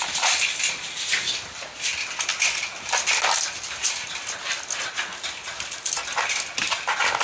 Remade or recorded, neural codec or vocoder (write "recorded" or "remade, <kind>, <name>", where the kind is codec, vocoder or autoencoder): recorded